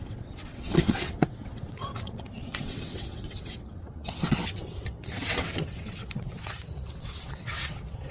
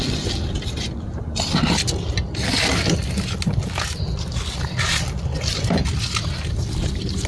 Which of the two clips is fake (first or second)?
first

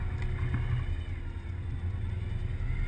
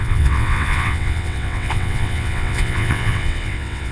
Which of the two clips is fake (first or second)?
second